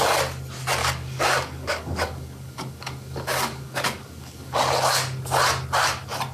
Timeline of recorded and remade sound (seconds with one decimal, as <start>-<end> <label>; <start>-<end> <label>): 0.0-0.8 recorded; 0.8-4.6 remade; 4.6-6.3 recorded